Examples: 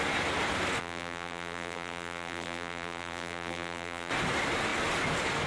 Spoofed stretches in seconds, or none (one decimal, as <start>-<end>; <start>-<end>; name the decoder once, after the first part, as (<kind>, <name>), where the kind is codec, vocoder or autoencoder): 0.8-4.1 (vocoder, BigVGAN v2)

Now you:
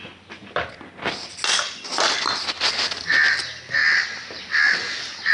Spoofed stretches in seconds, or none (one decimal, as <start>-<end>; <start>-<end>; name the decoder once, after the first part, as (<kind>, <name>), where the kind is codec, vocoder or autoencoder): none

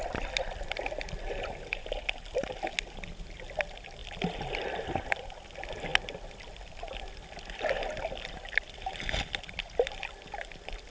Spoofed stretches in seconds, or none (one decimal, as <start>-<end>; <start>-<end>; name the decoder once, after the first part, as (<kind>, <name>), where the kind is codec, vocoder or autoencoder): none

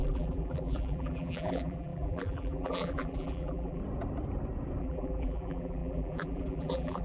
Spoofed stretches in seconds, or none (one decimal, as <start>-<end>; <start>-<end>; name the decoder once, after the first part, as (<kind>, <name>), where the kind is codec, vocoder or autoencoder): 0.0-3.8 (vocoder, BigVGAN v2); 4.8-7.0

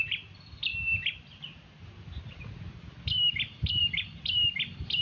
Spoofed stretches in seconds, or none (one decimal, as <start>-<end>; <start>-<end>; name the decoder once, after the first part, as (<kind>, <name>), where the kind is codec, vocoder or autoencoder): 0.0-0.7 (vocoder, BigVGAN v2); 3.7-5.0